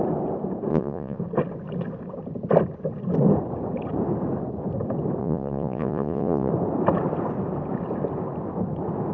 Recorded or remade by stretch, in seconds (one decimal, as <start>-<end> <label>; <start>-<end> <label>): 0.0-0.7 recorded; 0.7-1.2 remade; 1.2-5.2 recorded; 5.2-6.5 remade; 6.5-9.1 recorded